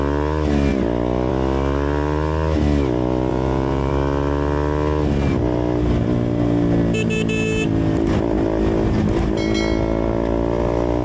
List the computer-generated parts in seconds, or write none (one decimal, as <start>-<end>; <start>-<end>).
3.3-3.9